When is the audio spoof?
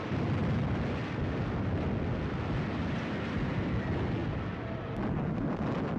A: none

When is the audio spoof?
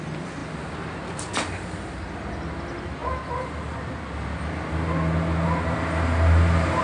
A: none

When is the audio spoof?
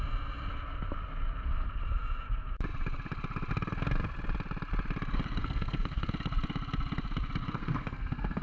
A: 5.4-6.1 (codec, SNAC); 7.6-8.4